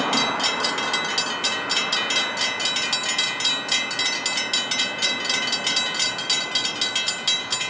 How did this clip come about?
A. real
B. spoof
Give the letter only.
A